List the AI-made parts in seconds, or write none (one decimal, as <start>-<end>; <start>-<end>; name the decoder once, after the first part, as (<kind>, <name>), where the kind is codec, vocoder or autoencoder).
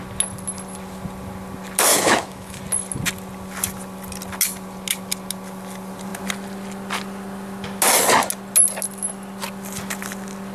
1.9-2.6 (autoencoder, DAC-VAE)